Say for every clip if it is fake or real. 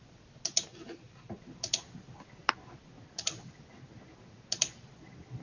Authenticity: real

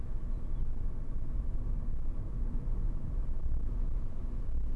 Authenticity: real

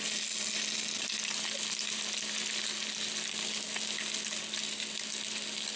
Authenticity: real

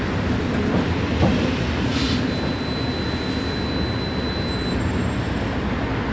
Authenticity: real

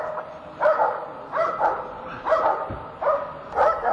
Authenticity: real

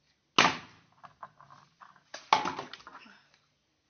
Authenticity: real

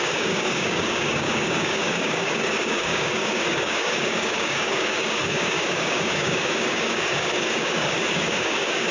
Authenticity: fake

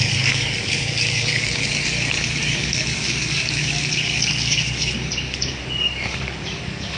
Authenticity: fake